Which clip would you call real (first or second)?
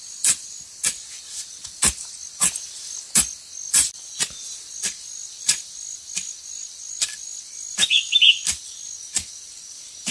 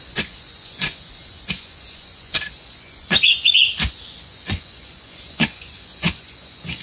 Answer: first